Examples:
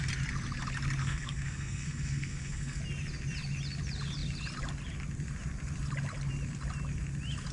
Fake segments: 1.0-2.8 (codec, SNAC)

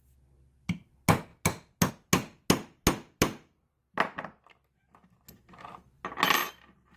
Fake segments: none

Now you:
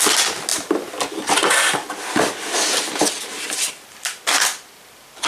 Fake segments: none

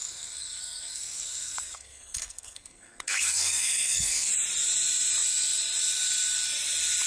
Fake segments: 0.0-4.3 (codec, SNAC)

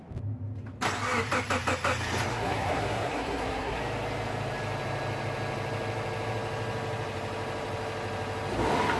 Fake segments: 2.3-3.8 (codec, SNAC)

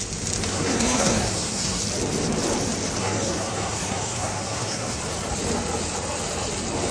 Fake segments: 0.5-1.8 (codec, SNAC); 3.0-5.0

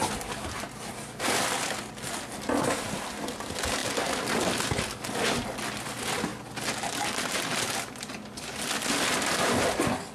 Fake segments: none